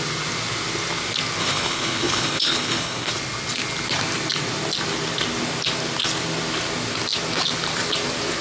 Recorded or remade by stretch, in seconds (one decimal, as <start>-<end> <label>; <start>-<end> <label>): 0.0-1.4 recorded; 1.4-3.1 remade; 3.1-8.4 recorded